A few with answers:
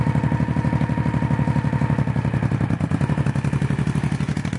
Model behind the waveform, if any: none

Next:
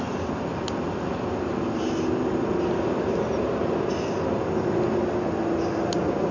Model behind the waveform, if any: none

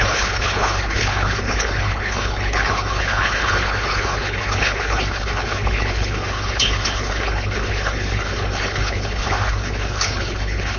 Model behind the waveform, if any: codec, HILCodec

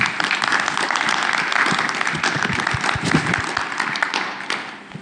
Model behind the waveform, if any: none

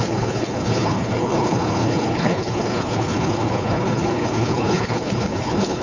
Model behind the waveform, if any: codec, HILCodec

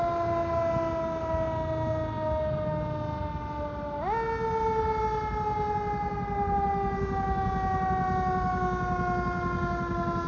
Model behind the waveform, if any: none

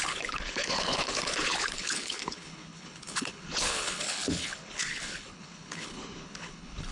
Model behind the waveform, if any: codec, HILCodec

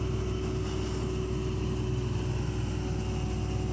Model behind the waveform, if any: none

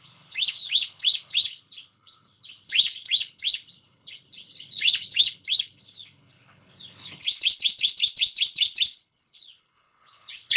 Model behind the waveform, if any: codec, HILCodec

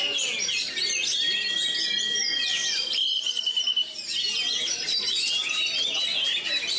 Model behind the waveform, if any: none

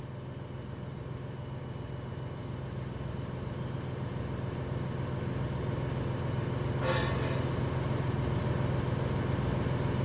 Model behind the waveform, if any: none